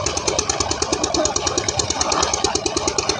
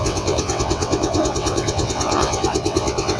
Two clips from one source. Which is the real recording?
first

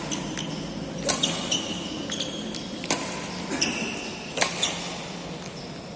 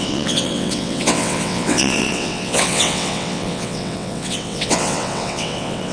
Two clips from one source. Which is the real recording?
first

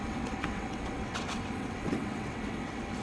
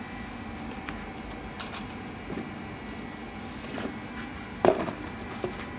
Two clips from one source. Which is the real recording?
second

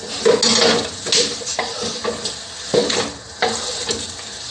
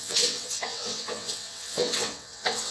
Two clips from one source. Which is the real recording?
first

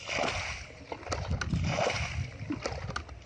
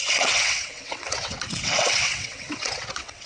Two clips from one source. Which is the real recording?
first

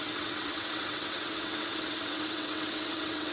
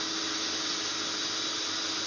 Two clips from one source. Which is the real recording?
second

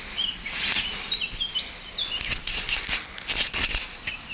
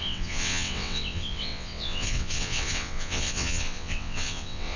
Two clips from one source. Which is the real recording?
first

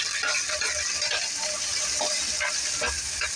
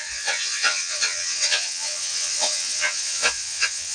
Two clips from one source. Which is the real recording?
first